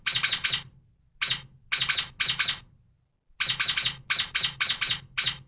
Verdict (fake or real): real